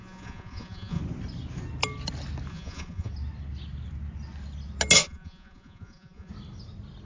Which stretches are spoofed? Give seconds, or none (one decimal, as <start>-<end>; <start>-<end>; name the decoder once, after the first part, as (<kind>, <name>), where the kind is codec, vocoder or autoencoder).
0.0-1.0 (vocoder, Vocos); 2.5-3.1; 5.0-6.3